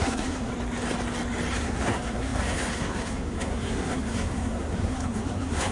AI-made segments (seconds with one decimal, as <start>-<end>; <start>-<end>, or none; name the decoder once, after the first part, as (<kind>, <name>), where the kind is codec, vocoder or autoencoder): 0.0-0.5 (codec, SNAC); 1.6-5.7